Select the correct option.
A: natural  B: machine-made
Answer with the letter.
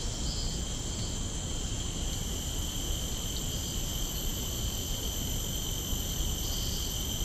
A